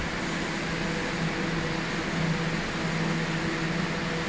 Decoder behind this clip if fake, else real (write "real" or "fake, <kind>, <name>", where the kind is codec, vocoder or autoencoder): real